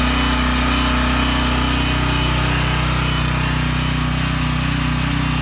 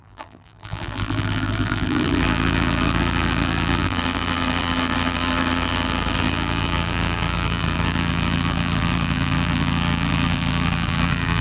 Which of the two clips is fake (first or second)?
second